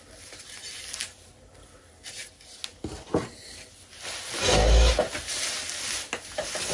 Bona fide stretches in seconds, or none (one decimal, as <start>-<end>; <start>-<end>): 0.0-6.7